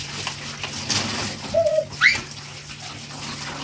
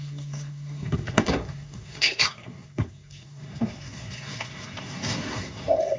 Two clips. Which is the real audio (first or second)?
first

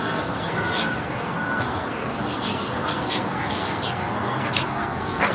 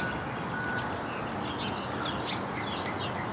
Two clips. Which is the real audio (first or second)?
second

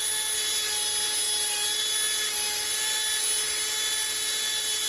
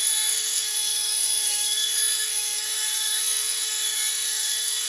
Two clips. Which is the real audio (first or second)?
first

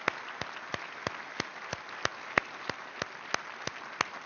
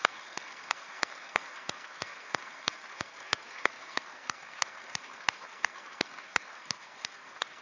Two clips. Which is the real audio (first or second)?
first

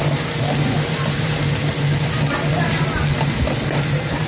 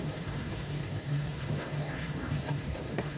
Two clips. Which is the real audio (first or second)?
first